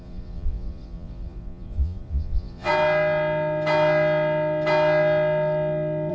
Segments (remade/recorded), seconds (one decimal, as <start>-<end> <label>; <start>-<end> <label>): 0.0-2.7 remade; 2.7-6.1 recorded